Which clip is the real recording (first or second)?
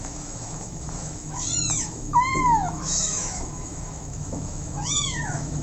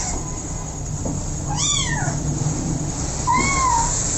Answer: second